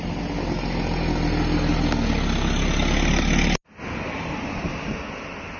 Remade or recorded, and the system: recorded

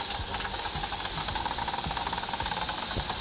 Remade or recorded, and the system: recorded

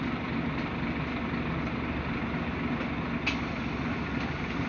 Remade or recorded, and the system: recorded